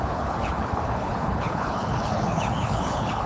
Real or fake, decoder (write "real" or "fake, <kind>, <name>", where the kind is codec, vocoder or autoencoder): fake, codec, HILCodec